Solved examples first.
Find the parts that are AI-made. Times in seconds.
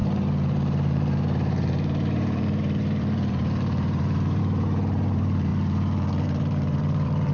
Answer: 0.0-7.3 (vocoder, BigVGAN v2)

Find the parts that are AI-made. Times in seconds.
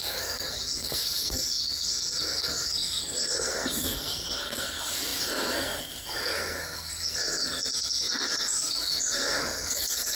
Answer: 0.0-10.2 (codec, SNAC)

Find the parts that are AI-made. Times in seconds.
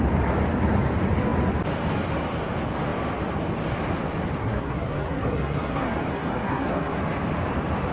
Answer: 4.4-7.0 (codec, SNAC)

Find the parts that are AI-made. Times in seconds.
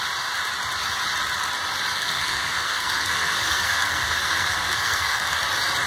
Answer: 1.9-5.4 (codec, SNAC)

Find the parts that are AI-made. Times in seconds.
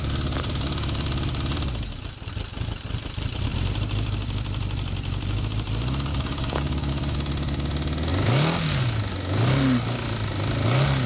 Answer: 6.1-6.9 (codec, DAC)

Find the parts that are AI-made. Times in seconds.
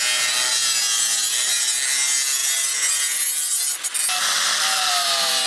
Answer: none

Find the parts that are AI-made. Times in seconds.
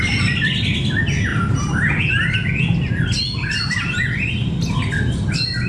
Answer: none